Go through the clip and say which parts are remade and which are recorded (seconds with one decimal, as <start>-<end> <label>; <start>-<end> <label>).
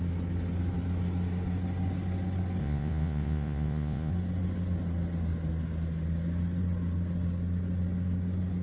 0.0-2.6 recorded; 2.6-4.1 remade; 4.1-8.6 recorded